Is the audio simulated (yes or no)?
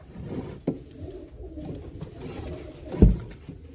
no